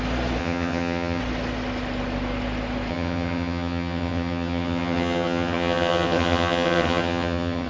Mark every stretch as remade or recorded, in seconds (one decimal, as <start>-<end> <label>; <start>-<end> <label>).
0.0-0.4 recorded; 0.4-1.2 remade; 1.2-2.9 recorded; 2.9-7.7 remade